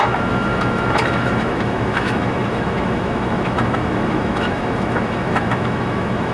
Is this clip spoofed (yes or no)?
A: yes